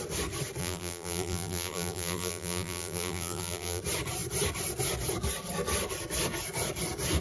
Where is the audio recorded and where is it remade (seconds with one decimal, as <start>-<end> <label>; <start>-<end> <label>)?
0.0-0.6 recorded; 0.6-3.8 remade; 3.8-7.2 recorded